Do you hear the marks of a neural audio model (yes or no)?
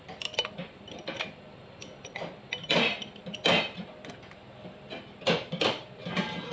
no